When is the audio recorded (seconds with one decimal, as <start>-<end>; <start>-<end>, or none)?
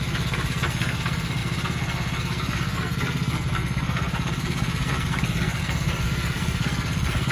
none